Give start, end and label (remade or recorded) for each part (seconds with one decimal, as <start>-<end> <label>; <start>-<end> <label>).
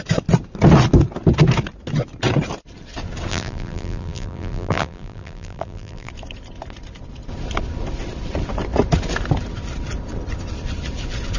0.0-3.3 recorded; 3.3-6.1 remade; 6.1-11.4 recorded